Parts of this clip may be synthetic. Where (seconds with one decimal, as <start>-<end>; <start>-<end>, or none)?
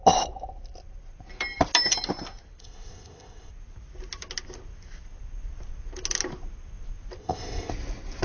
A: 2.6-3.5; 7.2-7.7